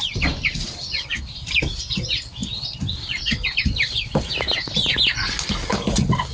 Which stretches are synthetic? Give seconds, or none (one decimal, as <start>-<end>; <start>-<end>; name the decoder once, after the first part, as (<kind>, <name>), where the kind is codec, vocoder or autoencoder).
none